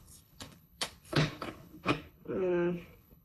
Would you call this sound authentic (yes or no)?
no